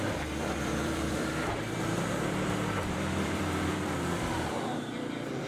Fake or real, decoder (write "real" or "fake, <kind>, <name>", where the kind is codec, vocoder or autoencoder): fake, vocoder, BigVGAN v2